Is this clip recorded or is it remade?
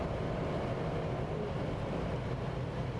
recorded